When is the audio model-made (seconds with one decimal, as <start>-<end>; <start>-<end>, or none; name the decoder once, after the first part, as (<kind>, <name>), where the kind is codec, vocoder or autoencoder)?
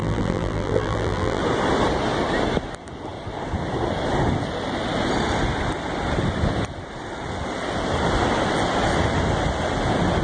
0.0-1.4 (vocoder, BigVGAN v2)